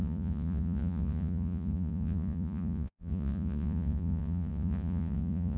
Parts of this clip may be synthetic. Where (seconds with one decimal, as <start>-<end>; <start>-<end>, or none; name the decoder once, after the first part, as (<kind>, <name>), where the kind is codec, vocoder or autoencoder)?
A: 0.0-5.6 (vocoder, Vocos)